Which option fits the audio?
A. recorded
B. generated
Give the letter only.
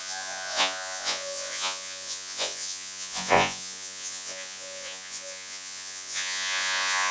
B